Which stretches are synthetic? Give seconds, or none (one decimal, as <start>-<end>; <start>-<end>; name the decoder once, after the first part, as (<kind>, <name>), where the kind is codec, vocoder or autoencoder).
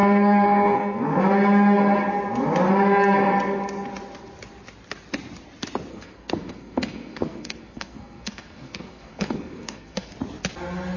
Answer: 0.0-1.2 (codec, SNAC); 5.9-10.1